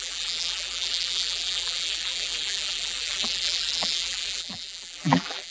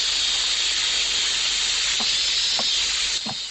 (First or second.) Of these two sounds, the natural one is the second